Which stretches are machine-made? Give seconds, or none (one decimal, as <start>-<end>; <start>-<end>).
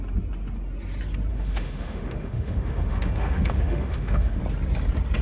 1.3-4.4